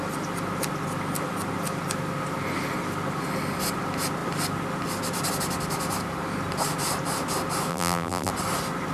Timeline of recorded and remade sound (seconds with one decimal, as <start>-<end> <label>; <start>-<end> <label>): 0.0-7.7 recorded; 7.7-8.3 remade; 8.3-8.9 recorded